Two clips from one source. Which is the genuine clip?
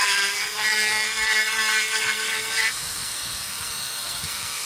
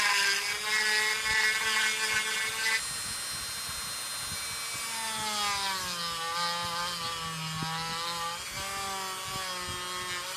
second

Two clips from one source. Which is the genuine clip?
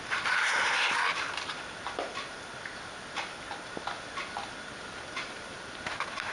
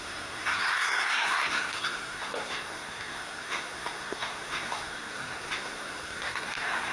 first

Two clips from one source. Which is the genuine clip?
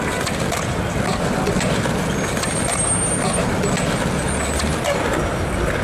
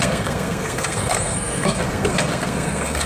first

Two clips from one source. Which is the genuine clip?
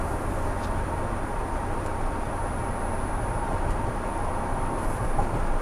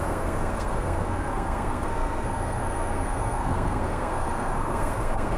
first